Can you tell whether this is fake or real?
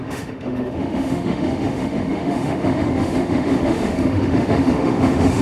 fake